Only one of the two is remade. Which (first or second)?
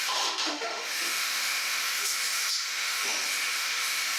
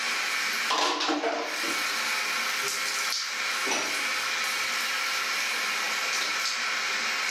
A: first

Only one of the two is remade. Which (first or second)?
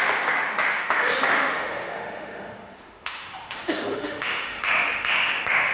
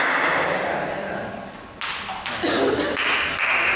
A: first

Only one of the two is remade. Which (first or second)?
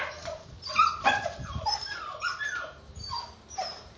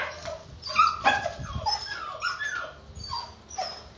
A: first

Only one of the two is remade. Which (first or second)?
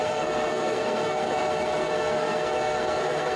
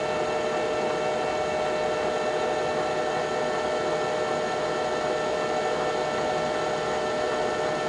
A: first